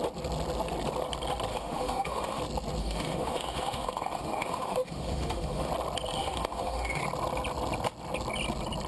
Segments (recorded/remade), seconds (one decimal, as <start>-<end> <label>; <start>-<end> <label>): 0.0-1.5 recorded; 1.5-2.4 remade; 2.4-2.8 recorded; 2.8-5.7 remade; 5.7-6.2 recorded; 6.2-7.0 remade; 7.0-8.9 recorded